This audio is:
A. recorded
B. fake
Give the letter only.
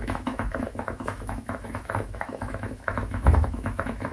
B